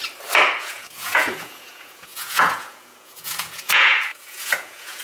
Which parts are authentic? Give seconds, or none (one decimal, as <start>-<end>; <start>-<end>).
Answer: 0.0-0.6